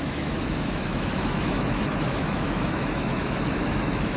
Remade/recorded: remade